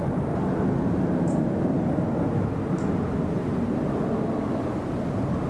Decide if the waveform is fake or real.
real